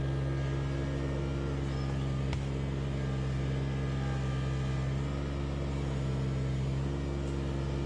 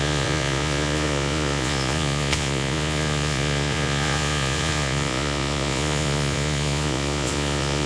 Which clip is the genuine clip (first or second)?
first